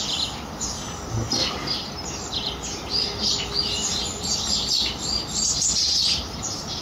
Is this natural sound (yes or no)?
yes